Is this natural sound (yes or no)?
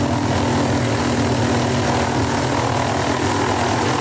yes